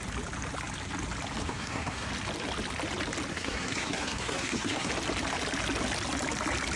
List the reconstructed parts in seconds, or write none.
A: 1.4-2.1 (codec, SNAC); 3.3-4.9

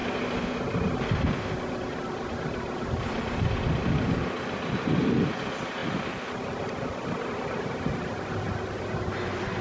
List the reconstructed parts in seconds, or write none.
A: none

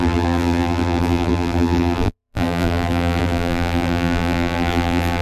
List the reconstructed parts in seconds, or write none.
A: 0.0-5.2 (vocoder, BigVGAN v2)

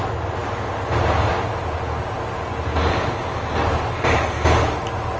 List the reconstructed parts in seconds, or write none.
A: none

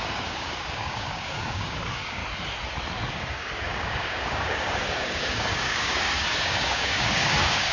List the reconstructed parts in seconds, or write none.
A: 0.0-2.2 (codec, DAC); 3.1-7.7

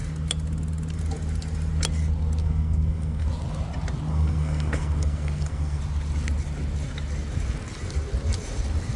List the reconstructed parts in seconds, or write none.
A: 2.4-3.3 (codec, SNAC); 4.1-5.8